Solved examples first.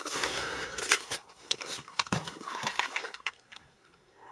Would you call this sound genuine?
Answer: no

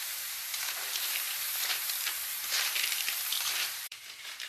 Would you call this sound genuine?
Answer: no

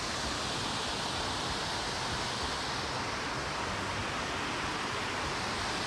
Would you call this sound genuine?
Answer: yes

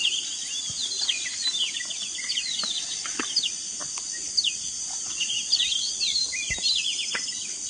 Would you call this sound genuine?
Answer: yes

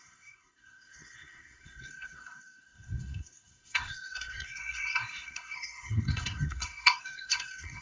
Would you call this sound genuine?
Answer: no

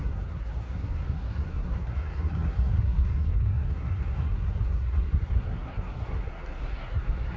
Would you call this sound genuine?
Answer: no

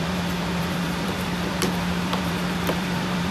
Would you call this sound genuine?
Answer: no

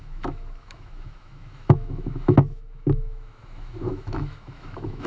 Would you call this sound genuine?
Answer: no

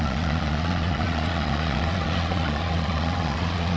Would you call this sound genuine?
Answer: no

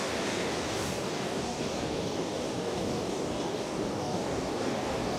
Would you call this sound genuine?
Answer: no